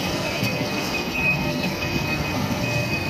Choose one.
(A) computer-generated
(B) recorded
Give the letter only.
A